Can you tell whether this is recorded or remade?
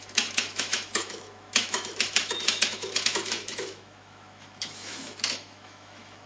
remade